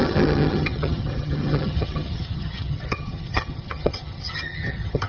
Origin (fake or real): fake